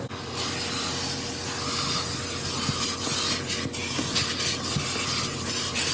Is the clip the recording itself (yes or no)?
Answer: yes